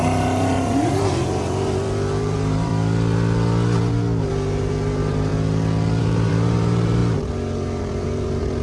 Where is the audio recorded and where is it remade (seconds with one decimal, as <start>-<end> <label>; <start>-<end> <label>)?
0.0-2.7 remade; 2.7-4.3 recorded; 4.3-5.3 remade; 5.3-6.0 recorded; 6.0-8.6 remade